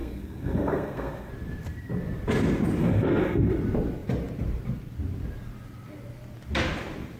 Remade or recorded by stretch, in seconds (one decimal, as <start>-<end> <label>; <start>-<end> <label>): 0.0-1.3 remade; 1.3-2.8 recorded; 2.8-3.5 remade; 3.5-7.2 recorded